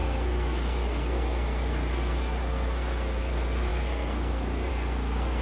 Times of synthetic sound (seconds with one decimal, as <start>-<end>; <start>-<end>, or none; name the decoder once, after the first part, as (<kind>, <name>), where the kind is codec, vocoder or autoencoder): 0.0-5.4 (codec, SNAC)